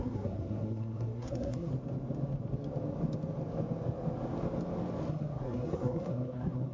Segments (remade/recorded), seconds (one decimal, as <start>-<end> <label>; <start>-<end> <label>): 0.0-1.7 remade; 1.7-5.1 recorded; 5.1-6.7 remade